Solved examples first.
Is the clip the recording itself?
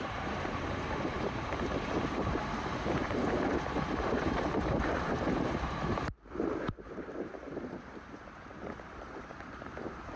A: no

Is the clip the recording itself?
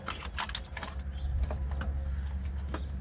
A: yes